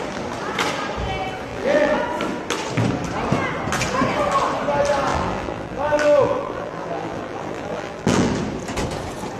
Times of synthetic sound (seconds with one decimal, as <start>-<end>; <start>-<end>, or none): 1.5-2.0; 5.1-8.3